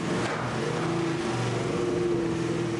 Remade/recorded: recorded